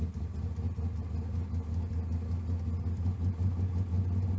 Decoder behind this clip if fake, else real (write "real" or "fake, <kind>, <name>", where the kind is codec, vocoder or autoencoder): real